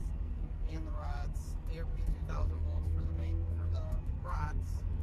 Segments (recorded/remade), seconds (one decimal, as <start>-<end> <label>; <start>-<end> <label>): 0.0-1.4 remade; 1.4-1.9 recorded; 1.9-5.0 remade